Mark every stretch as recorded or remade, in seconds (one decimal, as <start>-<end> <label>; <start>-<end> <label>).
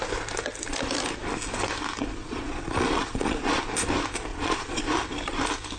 0.0-2.2 recorded; 2.2-3.6 remade; 3.6-4.3 recorded; 4.3-4.8 remade; 4.8-5.8 recorded